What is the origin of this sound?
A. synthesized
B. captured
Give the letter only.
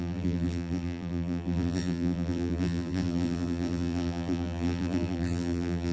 A